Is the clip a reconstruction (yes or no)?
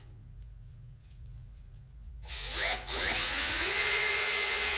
yes